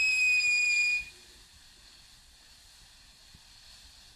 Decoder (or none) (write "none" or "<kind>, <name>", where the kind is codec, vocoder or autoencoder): none